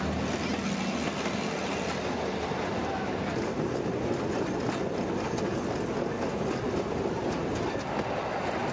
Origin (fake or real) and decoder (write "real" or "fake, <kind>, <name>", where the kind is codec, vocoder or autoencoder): real